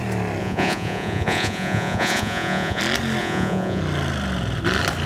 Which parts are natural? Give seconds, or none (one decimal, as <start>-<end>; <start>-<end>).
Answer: 0.0-0.4; 2.8-3.2; 3.8-5.1